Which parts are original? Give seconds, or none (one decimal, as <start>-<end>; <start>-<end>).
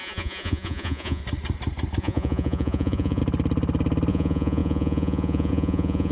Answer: 1.2-2.0; 3.2-4.1